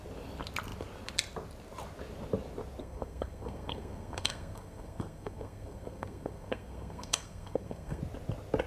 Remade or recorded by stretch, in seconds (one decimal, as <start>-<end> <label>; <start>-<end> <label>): 0.0-2.8 recorded; 2.8-8.0 remade; 8.0-8.7 recorded